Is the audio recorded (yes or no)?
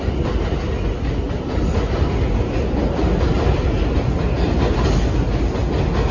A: yes